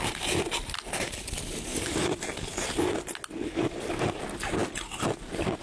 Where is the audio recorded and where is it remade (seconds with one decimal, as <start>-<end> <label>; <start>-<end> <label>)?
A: 0.0-5.6 recorded